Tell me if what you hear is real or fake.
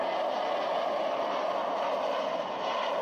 real